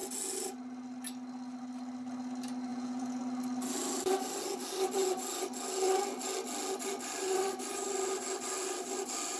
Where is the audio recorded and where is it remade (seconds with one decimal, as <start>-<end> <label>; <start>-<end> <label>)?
0.0-2.7 recorded; 2.7-3.2 remade; 3.2-9.4 recorded